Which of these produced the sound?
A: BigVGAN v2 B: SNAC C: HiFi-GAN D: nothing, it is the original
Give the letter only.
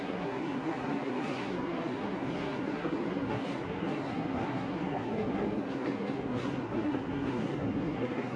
B